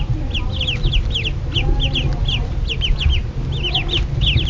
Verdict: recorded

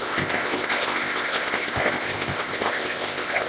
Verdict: remade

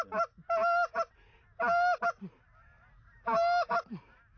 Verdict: recorded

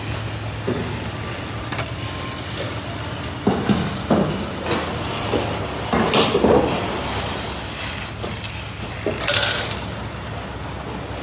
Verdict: recorded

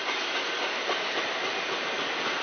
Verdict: recorded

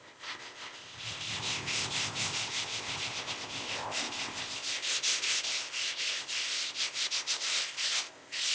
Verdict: remade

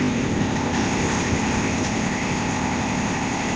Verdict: remade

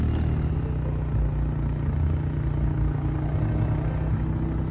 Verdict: recorded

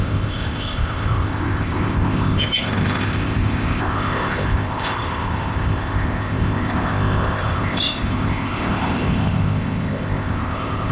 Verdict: remade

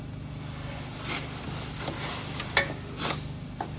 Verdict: recorded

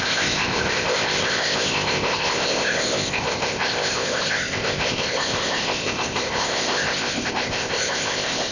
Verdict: remade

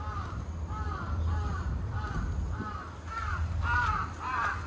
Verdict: recorded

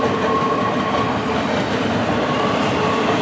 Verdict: recorded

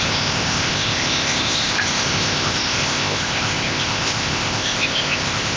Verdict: remade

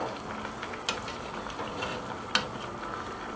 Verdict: recorded